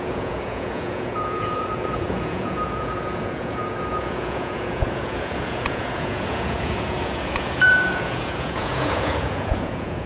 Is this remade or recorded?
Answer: remade